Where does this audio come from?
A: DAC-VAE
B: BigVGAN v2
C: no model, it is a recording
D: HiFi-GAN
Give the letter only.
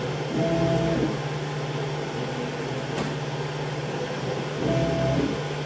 C